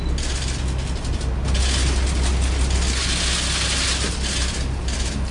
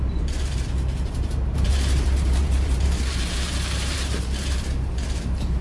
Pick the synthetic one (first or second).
second